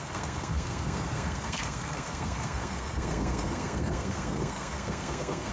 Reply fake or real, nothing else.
fake